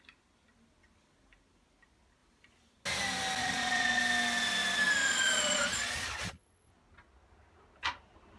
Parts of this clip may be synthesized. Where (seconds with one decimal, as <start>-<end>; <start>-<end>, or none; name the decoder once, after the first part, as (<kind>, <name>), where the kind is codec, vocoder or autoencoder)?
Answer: 3.4-4.0 (vocoder, Vocos); 5.0-6.7

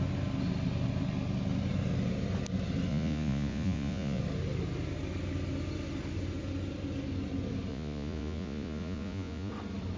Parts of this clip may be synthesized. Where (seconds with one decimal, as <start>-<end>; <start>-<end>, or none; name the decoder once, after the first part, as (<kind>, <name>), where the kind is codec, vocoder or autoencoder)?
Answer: 2.9-4.2 (vocoder, Vocos); 7.7-9.5

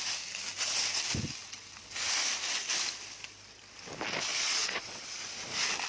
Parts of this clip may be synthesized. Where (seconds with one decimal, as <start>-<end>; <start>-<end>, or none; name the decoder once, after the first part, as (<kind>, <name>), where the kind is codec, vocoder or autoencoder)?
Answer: 4.3-5.0 (vocoder, WaveNeXt)

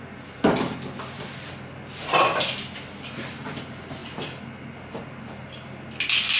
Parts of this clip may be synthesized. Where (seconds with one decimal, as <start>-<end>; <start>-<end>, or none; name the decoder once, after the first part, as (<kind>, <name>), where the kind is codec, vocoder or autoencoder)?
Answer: none